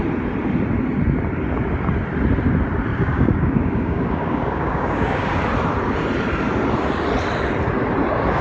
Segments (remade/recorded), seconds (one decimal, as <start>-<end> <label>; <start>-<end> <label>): 0.0-2.9 recorded; 2.9-5.4 remade; 5.4-8.4 recorded